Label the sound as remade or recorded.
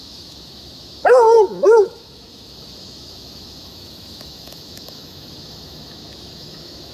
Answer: remade